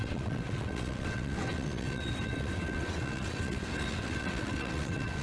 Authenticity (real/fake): fake